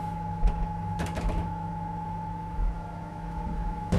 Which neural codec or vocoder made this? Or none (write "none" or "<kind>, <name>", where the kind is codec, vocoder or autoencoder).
autoencoder, DAC-VAE